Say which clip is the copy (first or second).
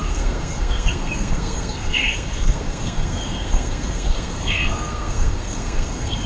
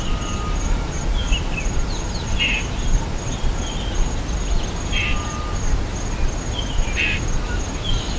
first